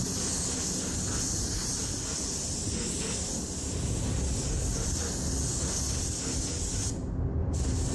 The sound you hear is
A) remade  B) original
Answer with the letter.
B